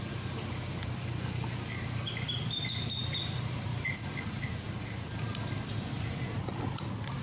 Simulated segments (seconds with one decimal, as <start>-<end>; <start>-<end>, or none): none